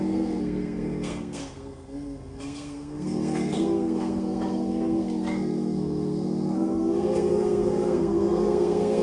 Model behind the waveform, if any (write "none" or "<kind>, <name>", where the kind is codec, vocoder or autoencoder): codec, SNAC